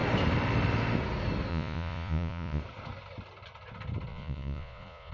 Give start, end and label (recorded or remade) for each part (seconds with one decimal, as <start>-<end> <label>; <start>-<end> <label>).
0.0-1.5 recorded; 1.5-2.6 remade; 2.6-4.1 recorded; 4.1-5.1 remade